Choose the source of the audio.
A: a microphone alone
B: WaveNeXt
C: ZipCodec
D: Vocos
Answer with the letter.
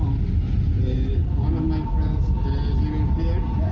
A